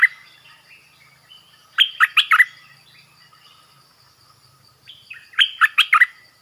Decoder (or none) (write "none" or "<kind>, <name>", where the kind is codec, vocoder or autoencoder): none